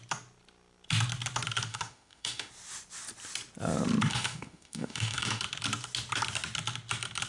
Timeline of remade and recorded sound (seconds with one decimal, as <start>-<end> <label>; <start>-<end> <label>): 0.0-1.7 recorded; 1.7-2.5 remade; 2.5-4.1 recorded; 4.1-5.4 remade; 5.4-7.3 recorded